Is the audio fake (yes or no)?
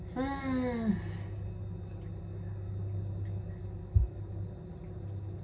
no